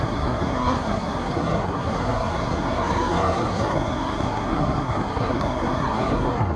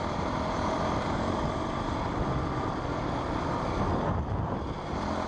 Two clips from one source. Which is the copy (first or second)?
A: first